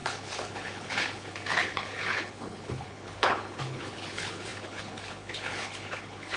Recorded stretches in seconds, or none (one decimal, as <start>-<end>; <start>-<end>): none